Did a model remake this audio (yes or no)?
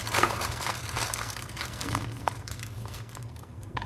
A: yes